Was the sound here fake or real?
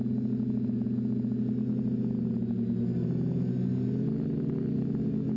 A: real